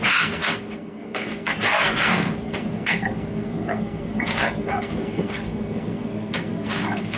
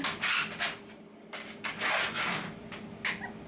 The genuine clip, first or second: second